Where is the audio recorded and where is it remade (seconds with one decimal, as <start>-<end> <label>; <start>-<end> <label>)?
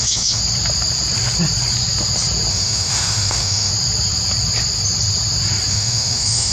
0.0-0.4 remade; 0.4-2.5 recorded; 2.5-3.7 remade; 3.7-5.7 recorded; 5.7-6.5 remade